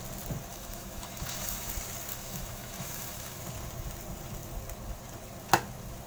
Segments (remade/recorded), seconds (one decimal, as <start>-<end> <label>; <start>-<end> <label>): 0.0-0.5 recorded; 0.5-1.7 remade; 1.7-2.1 recorded; 2.1-3.4 remade; 3.4-6.1 recorded